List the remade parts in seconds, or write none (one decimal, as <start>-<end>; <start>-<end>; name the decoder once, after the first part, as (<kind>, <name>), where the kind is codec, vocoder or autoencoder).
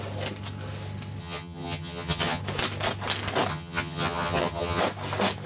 1.2-2.4 (vocoder, HiFi-GAN); 3.5-4.8